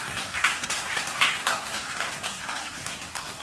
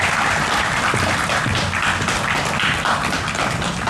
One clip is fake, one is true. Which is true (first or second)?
second